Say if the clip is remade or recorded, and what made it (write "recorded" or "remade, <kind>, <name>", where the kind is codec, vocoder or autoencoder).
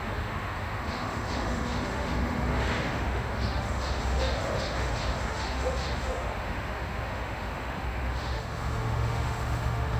remade, autoencoder, DAC-VAE